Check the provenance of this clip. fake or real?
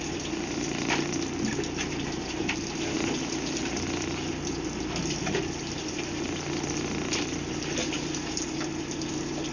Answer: real